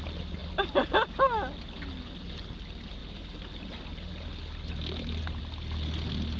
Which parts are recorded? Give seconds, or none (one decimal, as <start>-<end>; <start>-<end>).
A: 0.0-6.4